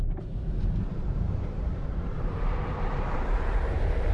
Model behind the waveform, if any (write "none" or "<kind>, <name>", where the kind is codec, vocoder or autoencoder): vocoder, BigVGAN v2